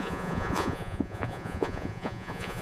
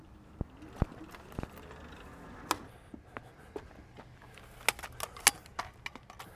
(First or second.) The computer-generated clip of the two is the first